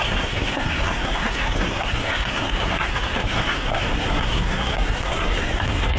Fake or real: fake